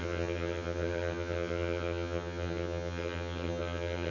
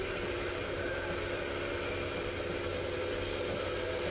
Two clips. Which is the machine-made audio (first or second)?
first